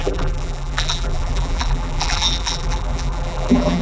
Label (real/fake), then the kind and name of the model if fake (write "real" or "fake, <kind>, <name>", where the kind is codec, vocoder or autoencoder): fake, vocoder, BigVGAN v2